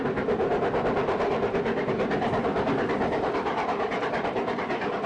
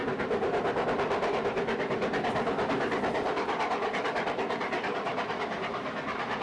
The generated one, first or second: first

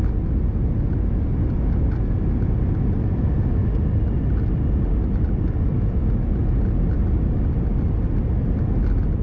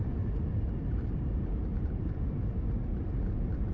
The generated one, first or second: second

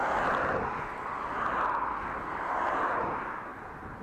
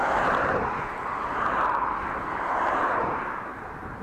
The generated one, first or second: second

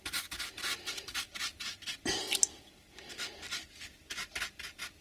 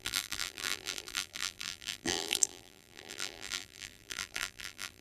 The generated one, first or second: second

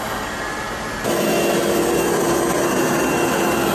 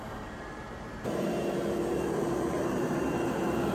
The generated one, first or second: second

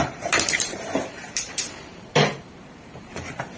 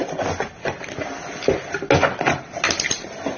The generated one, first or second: first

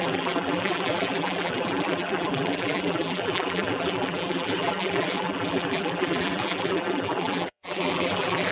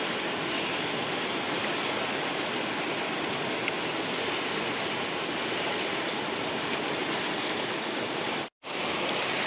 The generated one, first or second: first